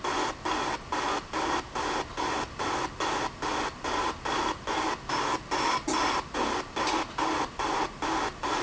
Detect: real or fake real